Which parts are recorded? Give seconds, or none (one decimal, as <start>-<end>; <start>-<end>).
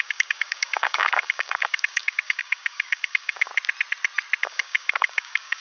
3.5-4.4